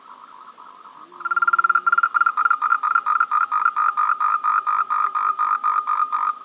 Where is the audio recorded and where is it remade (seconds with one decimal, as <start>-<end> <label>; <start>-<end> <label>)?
0.0-6.4 recorded